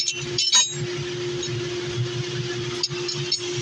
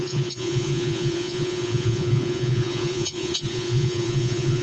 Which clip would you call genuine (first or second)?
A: first